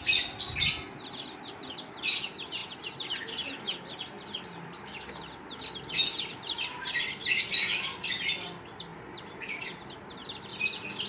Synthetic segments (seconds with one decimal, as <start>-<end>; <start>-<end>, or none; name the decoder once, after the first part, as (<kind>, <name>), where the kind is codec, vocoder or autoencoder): none